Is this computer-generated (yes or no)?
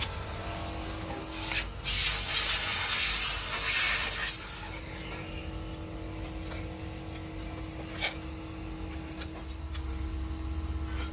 no